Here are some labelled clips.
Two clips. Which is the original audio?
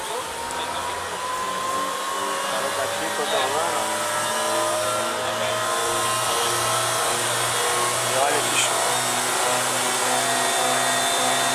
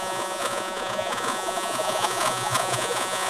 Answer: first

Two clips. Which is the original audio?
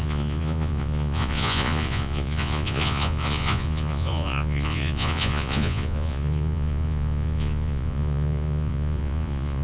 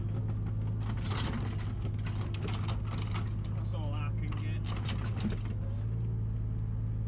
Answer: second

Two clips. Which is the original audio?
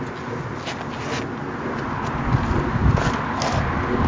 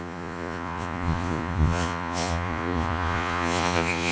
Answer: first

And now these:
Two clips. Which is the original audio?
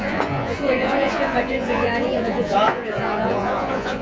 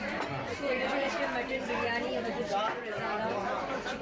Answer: second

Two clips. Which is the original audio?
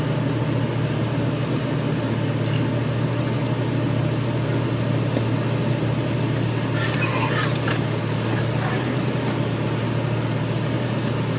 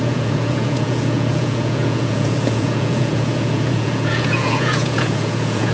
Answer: first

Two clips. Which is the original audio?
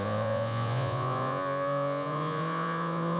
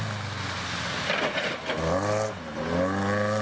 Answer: second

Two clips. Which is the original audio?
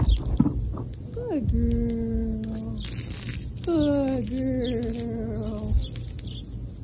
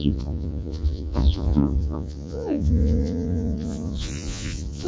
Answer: first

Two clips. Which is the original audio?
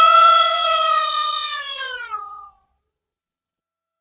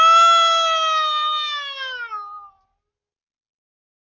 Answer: second